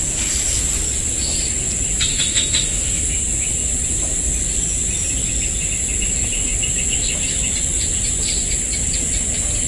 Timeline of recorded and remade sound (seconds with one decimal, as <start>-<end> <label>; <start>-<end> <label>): 0.0-2.1 recorded; 2.1-3.0 remade; 3.0-9.7 recorded